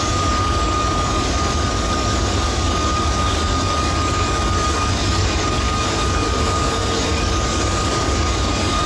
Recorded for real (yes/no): no